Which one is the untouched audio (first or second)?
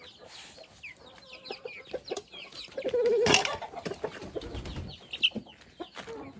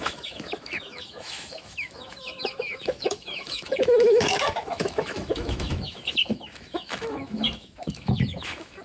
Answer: first